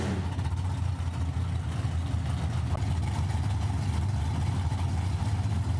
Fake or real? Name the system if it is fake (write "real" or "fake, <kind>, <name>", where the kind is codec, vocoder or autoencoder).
real